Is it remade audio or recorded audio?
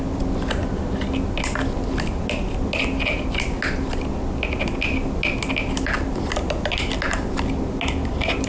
recorded